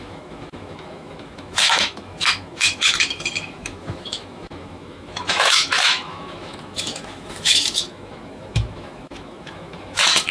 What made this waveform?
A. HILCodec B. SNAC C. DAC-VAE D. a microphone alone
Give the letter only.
C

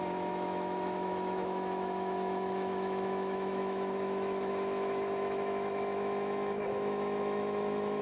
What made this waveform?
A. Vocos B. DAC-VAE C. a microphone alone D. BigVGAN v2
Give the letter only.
B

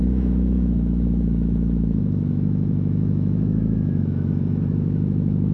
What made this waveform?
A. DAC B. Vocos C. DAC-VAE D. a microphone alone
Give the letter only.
C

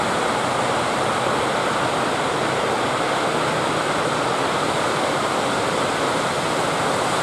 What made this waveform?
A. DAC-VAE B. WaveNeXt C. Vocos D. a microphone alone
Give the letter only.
D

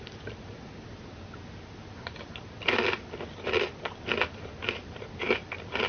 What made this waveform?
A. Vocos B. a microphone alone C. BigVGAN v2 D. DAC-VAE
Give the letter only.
B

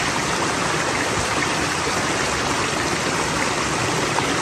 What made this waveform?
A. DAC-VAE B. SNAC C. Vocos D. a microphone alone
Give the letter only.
D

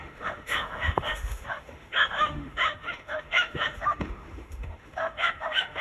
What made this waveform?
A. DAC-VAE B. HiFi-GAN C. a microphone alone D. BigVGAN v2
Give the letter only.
A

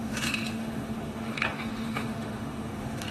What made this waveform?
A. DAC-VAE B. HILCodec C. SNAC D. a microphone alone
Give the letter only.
A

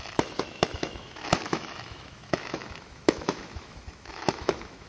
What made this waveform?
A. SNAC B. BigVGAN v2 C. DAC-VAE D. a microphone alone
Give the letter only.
C